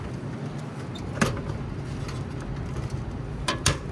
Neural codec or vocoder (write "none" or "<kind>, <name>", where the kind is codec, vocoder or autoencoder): none